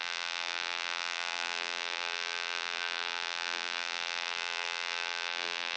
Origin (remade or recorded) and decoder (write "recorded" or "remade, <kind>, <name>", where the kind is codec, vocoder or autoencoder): remade, vocoder, BigVGAN v2